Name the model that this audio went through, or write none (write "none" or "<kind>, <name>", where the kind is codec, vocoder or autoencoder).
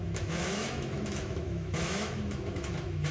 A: autoencoder, DAC-VAE